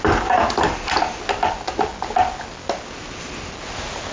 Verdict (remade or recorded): recorded